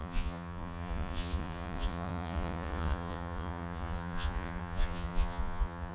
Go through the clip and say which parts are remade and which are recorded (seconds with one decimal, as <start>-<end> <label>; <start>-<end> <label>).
0.0-5.9 remade